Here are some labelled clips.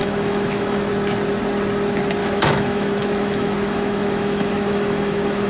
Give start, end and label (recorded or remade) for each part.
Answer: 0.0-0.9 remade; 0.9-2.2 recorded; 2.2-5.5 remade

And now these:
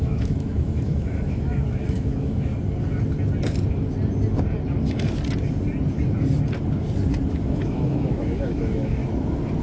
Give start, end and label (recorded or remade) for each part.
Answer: 0.0-2.5 remade; 2.5-7.3 recorded; 7.3-9.0 remade; 9.0-9.6 recorded